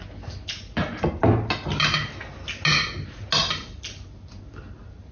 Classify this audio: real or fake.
real